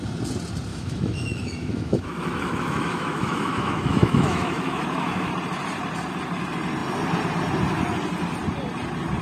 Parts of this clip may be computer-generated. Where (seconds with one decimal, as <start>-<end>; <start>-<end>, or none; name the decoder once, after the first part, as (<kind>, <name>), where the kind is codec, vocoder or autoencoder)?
0.7-5.3 (autoencoder, DAC-VAE)